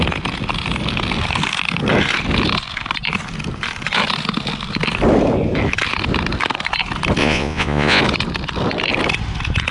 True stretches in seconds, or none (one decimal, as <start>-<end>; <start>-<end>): 0.0-7.2; 8.0-9.7